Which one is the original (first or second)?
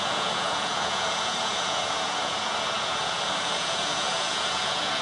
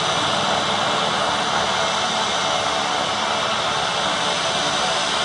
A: second